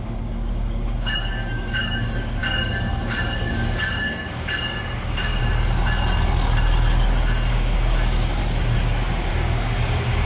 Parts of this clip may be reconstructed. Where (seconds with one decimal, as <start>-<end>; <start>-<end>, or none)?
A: 0.0-5.4; 7.5-8.4; 9.3-10.3